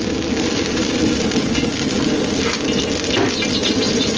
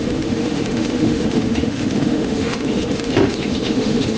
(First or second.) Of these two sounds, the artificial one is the second